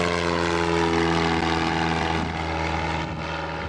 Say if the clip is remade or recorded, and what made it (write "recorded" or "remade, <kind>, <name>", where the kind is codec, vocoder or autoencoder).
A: recorded